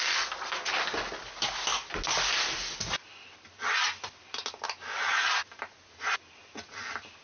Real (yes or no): yes